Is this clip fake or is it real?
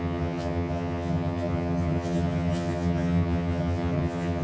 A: fake